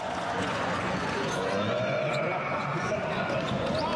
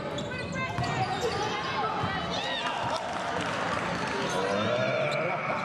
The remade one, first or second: first